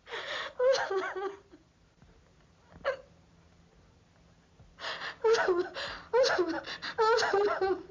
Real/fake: real